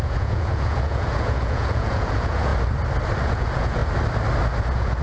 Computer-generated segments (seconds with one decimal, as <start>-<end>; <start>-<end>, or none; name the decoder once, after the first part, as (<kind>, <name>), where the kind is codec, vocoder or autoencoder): 0.0-2.5 (vocoder, Vocos); 3.2-3.8; 4.6-5.0

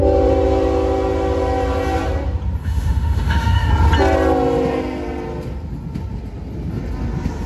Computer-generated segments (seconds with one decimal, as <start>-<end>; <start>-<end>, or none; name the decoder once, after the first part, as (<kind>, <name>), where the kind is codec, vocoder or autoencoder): 2.6-3.7 (autoencoder, DAC-VAE)